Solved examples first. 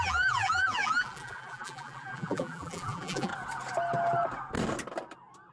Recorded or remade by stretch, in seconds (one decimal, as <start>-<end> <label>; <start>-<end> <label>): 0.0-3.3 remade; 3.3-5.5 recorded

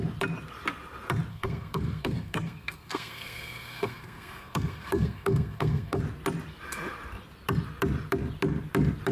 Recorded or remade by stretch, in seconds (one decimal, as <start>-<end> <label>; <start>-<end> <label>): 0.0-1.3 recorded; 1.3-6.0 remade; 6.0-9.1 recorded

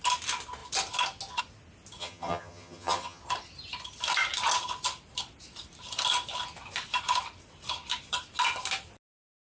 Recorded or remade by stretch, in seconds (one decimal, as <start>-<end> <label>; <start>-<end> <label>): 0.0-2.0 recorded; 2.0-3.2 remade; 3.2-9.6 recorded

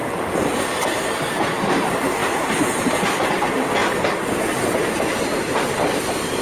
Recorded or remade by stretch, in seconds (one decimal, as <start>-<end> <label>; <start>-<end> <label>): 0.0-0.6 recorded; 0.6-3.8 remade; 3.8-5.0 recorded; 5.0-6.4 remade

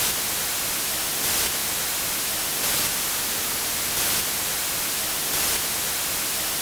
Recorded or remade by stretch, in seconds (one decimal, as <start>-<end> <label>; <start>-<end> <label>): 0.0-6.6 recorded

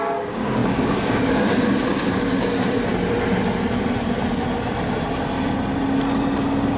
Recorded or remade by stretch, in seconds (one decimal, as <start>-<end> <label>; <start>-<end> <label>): 0.0-2.9 remade; 2.9-6.8 recorded

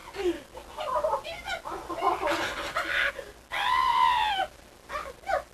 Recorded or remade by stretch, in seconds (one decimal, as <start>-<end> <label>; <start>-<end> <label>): 0.0-5.5 recorded

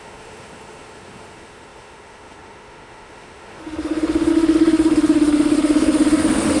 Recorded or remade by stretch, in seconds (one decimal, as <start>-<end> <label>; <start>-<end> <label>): 0.0-6.6 remade